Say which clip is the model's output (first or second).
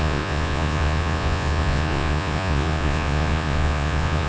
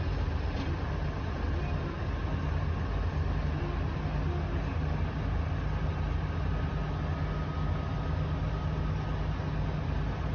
first